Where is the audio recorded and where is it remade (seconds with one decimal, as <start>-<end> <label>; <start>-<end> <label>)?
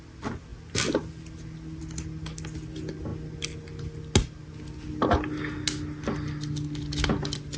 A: 0.0-7.6 recorded